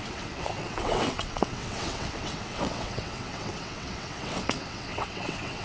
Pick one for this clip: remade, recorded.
remade